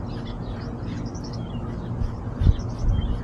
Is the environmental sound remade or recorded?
recorded